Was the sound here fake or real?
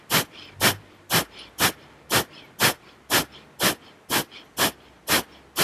real